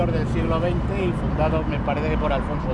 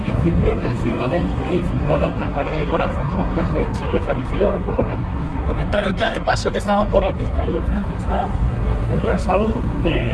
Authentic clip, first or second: first